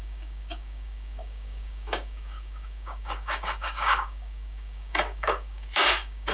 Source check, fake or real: fake